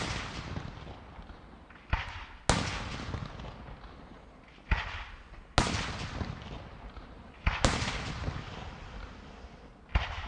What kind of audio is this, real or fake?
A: real